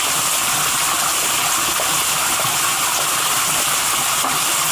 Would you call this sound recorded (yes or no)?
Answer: yes